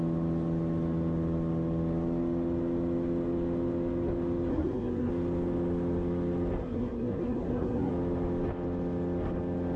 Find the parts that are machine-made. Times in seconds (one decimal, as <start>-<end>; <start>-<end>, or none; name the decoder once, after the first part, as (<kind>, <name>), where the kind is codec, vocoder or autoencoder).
4.5-5.1 (codec, SNAC); 6.6-7.9